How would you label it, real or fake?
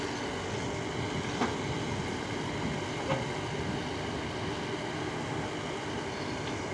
real